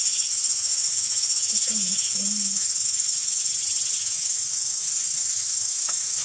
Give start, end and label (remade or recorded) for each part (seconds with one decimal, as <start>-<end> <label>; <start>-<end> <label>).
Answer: 0.0-3.5 remade; 3.5-4.0 recorded; 4.0-6.2 remade